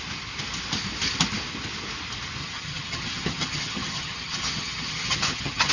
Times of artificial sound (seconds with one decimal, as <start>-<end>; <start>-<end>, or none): 2.4-5.7